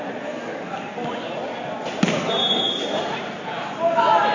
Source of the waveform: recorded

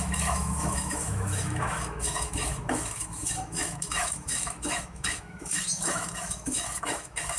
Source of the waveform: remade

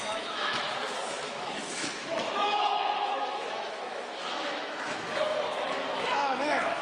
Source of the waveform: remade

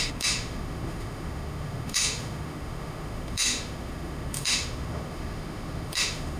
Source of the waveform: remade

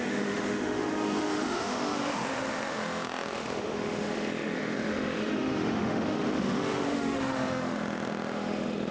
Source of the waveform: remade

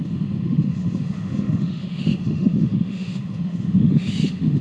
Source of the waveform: remade